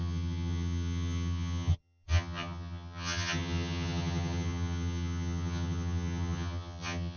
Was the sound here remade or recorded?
remade